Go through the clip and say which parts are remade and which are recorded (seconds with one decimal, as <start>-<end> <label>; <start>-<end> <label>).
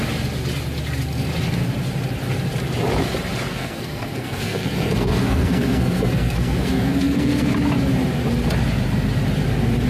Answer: 0.0-3.5 recorded; 3.5-7.5 remade; 7.5-9.9 recorded